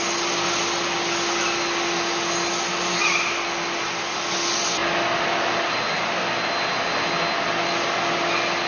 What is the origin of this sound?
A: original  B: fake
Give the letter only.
A